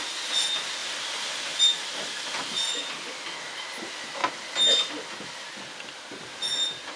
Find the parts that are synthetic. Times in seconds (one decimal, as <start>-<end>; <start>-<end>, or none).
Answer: none